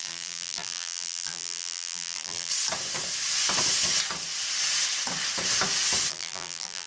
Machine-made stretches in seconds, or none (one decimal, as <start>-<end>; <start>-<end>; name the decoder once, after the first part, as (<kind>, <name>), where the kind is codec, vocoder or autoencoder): 0.0-2.5 (vocoder, BigVGAN v2); 6.1-6.9